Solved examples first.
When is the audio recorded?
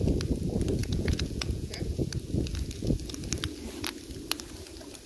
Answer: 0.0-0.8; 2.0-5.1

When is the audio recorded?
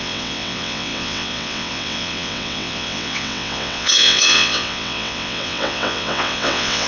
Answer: none